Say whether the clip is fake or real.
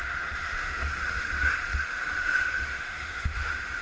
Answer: fake